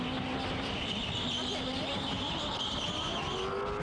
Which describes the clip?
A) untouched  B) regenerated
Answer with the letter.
A